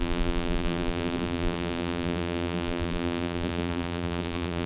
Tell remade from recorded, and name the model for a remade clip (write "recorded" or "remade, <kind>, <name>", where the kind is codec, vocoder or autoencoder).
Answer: remade, vocoder, BigVGAN v2